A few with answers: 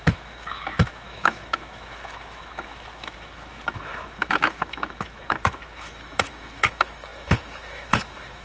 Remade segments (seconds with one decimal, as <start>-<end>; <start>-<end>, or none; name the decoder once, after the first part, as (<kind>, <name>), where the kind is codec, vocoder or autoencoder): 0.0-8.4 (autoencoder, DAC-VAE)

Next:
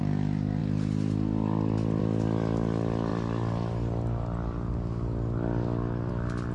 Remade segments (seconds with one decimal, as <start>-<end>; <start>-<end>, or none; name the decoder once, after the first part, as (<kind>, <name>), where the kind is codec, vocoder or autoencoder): none

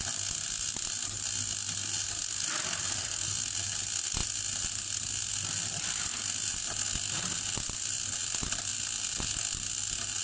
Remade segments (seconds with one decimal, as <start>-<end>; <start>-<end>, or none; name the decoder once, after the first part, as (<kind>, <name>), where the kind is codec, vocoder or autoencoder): none